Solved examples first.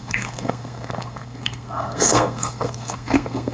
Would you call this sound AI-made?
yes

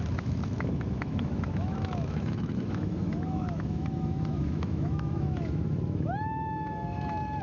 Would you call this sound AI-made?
yes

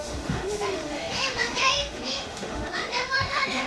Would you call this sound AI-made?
yes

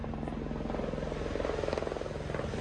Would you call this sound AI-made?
no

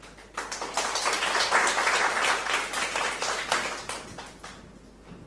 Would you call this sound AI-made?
no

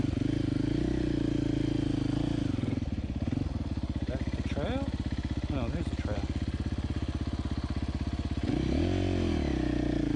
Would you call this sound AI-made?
no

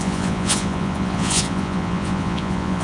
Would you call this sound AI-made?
yes